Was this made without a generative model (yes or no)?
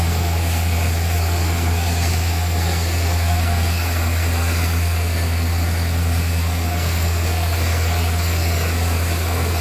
no